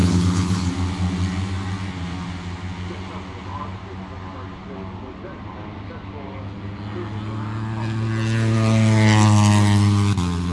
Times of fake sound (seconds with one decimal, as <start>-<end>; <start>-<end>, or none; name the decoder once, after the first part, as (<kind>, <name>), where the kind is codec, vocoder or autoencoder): 0.0-0.7 (codec, HILCodec)